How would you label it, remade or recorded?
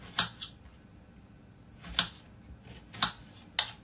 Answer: recorded